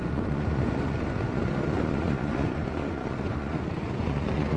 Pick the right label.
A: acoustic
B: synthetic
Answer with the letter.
B